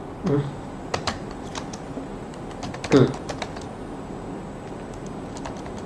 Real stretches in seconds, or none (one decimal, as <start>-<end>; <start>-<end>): 0.0-5.9